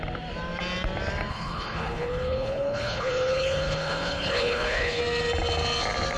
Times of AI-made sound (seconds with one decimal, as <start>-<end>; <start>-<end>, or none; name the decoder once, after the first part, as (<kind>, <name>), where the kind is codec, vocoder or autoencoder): 1.3-5.0 (codec, HILCodec)